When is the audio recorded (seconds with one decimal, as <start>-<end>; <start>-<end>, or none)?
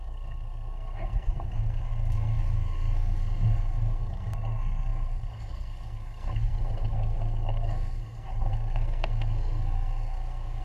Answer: none